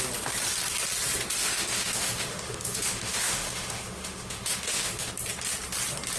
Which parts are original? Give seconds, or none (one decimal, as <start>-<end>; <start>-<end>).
0.0-1.4; 5.1-6.2